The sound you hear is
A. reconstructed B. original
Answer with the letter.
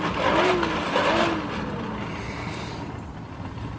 B